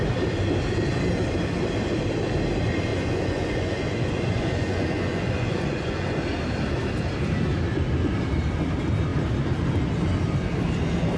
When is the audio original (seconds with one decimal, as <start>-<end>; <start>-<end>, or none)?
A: 0.0-2.9; 6.2-11.2